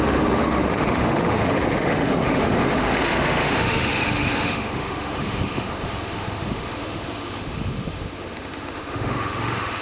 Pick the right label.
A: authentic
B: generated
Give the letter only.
B